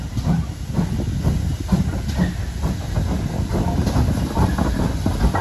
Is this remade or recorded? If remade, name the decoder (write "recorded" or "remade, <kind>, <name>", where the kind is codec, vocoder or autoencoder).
recorded